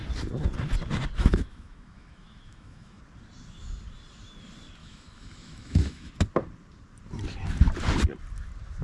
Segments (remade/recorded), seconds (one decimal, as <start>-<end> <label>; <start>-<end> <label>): 0.0-1.2 recorded; 1.2-3.0 remade; 3.0-4.8 recorded; 4.8-6.1 remade; 6.1-8.8 recorded